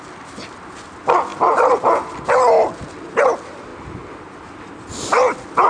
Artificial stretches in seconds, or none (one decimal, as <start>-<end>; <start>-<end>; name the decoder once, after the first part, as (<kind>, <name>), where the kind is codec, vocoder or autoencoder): 1.3-3.2 (vocoder, BigVGAN v2)